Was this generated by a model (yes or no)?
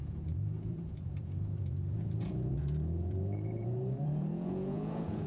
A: yes